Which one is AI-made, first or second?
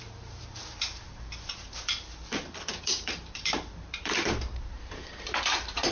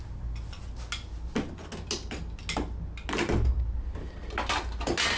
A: first